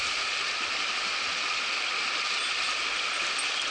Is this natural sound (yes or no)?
yes